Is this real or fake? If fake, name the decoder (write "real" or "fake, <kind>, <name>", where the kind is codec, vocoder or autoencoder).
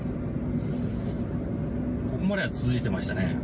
real